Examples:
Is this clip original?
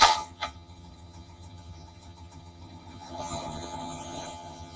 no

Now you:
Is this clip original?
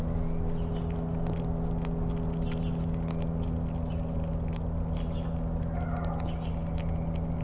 yes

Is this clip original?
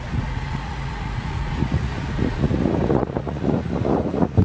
no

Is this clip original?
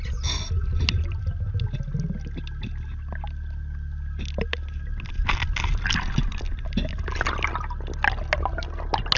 yes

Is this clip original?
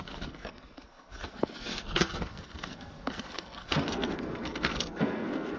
no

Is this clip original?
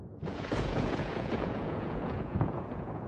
no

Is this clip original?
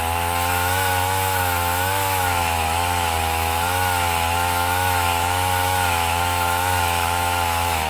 no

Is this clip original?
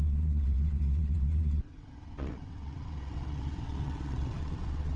no